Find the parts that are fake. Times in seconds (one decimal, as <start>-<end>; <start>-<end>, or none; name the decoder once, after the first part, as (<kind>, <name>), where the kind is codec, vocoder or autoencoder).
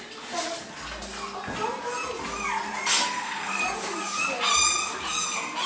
2.9-3.6 (codec, SNAC)